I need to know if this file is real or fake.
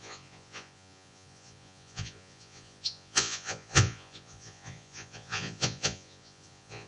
fake